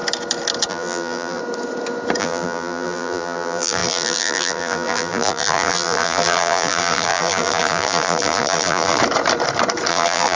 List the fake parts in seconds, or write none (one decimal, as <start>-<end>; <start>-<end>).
0.7-1.4; 2.2-9.0; 9.9-10.4